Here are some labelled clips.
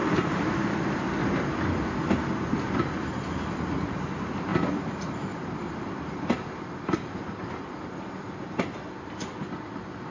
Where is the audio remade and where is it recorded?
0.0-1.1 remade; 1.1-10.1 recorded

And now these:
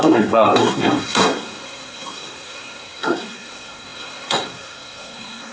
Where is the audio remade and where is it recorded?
0.0-5.5 remade

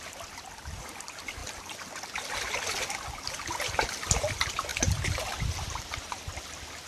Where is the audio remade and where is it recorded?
0.0-6.9 recorded

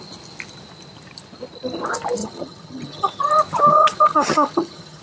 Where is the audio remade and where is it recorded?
0.0-2.2 recorded; 2.2-3.3 remade; 3.3-3.7 recorded; 3.7-5.0 remade

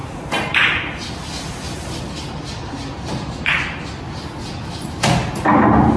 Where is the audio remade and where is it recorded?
0.0-2.0 recorded; 2.0-2.8 remade; 2.8-3.8 recorded; 3.8-6.0 remade

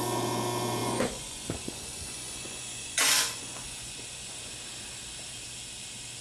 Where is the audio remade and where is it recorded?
0.0-0.8 recorded; 0.8-4.5 remade; 4.5-6.2 recorded